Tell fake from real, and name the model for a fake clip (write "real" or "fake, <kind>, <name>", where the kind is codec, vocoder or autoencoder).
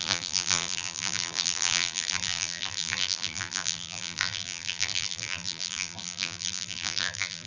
fake, vocoder, BigVGAN v2